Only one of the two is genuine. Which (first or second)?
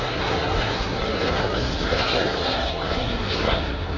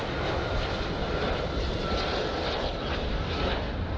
second